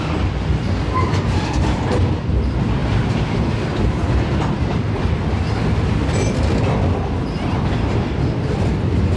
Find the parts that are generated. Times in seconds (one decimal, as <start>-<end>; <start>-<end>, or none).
none